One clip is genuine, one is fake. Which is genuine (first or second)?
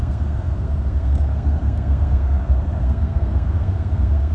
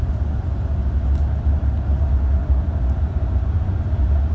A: second